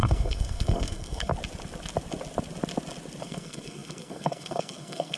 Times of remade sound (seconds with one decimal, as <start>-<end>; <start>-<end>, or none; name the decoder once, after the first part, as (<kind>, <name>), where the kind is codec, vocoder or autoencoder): 0.0-1.3 (codec, SNAC); 3.2-5.2